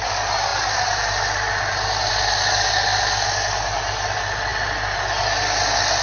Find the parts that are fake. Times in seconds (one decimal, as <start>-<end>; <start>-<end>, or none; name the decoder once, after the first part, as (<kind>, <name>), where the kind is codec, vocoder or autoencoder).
none